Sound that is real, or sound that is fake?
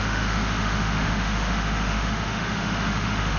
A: fake